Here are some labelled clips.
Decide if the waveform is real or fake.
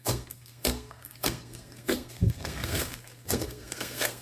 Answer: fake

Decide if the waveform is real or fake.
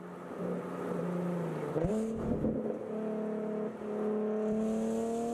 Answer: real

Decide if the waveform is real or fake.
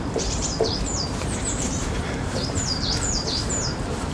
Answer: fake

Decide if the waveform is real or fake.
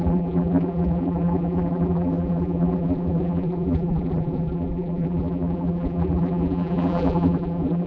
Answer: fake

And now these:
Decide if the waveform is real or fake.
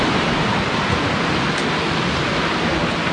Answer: real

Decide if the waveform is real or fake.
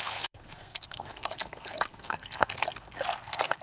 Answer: fake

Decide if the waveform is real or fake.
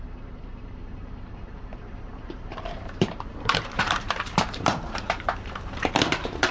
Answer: fake